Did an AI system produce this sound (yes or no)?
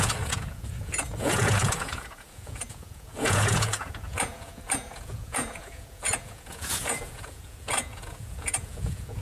yes